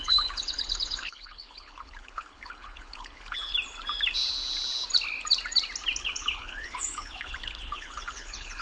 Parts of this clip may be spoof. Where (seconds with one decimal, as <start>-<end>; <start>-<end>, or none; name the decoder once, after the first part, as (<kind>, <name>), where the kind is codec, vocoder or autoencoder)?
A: 0.0-3.5 (codec, HILCodec); 6.0-8.6